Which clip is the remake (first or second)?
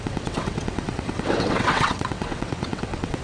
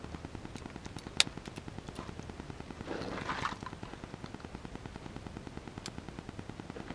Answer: first